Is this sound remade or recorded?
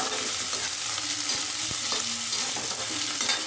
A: recorded